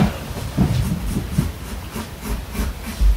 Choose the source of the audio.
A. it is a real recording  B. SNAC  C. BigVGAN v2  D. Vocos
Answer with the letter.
C